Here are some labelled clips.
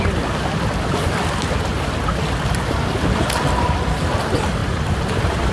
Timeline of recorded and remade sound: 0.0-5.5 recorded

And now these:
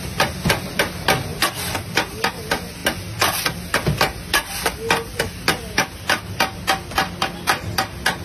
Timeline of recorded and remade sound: 0.0-8.2 recorded

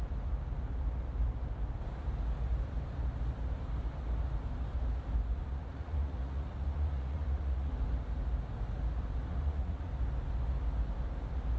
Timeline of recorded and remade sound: 0.0-5.5 recorded; 5.5-7.7 remade; 7.7-9.3 recorded; 9.3-9.9 remade; 9.9-11.6 recorded

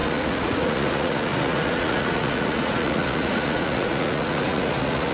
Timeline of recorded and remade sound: 0.0-5.1 remade

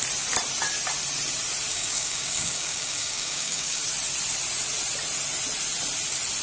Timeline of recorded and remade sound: 0.0-1.7 recorded; 1.7-3.8 remade; 3.8-6.4 recorded